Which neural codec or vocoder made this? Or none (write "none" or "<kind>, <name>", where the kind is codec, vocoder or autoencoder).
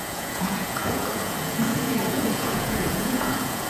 vocoder, Vocos